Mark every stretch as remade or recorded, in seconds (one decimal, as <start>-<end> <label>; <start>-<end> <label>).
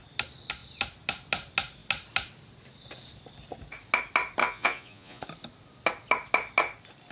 0.0-4.4 recorded; 4.4-5.2 remade; 5.2-7.1 recorded